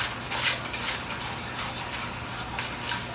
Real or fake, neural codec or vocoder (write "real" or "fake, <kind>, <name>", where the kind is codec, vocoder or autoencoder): real